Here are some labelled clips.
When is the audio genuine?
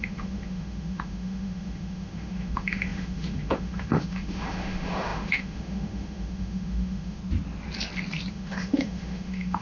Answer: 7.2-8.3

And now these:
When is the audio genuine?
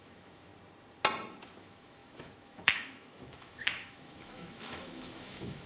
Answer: 0.5-1.6